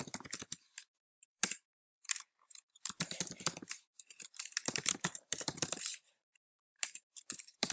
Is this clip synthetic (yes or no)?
yes